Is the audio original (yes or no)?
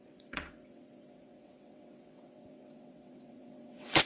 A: no